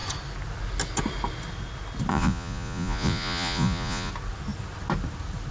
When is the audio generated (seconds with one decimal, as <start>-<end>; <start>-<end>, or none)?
2.1-4.1